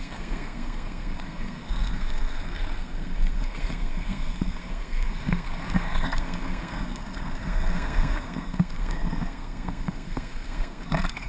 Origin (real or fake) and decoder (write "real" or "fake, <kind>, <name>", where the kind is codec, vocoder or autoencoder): fake, codec, SNAC